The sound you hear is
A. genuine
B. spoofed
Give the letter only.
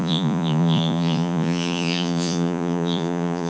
B